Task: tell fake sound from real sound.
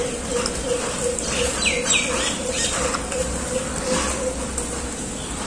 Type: real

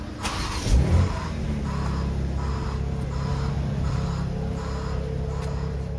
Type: real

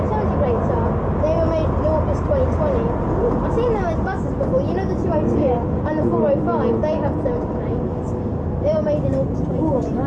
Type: real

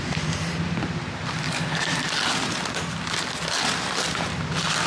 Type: real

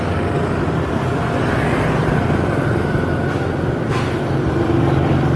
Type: real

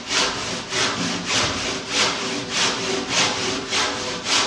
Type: real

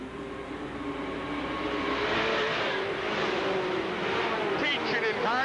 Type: real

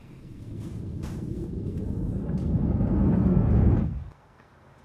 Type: fake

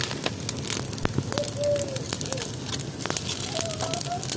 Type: real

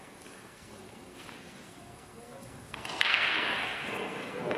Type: fake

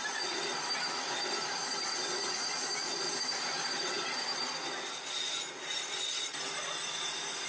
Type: real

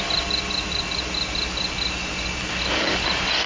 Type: real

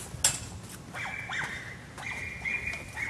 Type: real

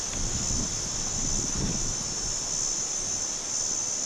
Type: real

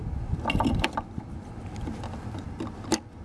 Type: real